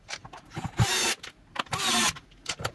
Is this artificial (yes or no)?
no